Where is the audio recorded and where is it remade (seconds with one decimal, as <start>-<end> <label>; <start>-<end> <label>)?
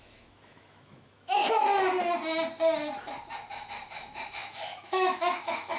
0.0-1.7 remade; 1.7-3.5 recorded; 3.5-5.8 remade